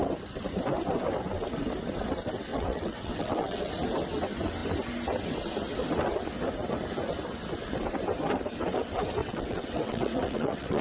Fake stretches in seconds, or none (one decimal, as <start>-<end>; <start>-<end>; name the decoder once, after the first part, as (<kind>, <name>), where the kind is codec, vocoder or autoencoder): 2.5-3.7 (vocoder, WaveNeXt); 9.2-10.8